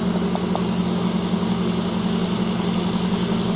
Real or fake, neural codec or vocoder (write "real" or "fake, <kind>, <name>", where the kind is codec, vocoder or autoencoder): real